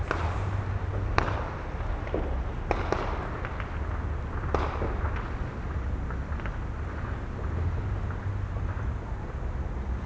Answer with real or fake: real